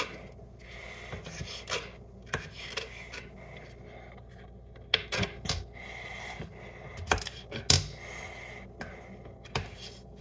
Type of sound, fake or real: real